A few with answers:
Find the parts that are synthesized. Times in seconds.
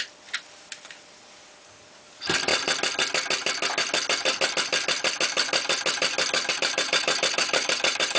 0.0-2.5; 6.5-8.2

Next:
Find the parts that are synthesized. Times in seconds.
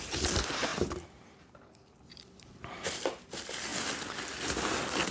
none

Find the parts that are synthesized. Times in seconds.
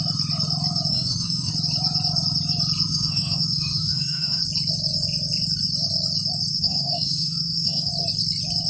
0.9-1.5; 2.9-4.4; 6.5-7.9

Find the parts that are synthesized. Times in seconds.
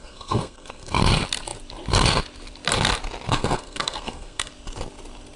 0.0-1.0; 3.3-4.5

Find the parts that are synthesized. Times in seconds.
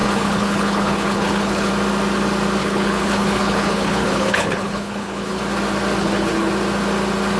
0.0-1.7; 2.6-5.4; 6.0-6.5